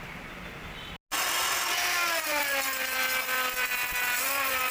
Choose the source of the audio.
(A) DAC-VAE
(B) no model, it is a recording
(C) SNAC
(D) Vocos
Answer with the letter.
B